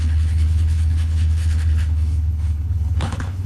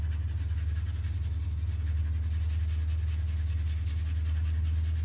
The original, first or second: second